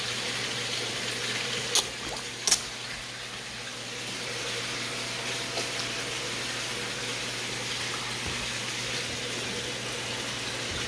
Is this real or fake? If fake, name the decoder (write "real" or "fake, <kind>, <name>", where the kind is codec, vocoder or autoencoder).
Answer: real